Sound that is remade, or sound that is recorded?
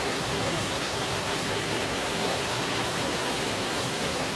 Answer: remade